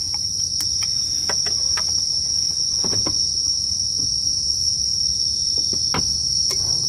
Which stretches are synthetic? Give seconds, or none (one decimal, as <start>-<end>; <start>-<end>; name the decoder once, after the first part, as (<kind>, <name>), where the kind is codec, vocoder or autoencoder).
0.0-0.5 (vocoder, BigVGAN v2); 4.1-4.9; 6.0-6.9